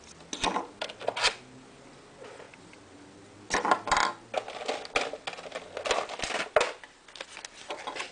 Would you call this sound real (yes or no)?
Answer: yes